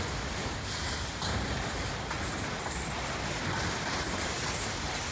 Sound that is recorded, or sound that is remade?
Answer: remade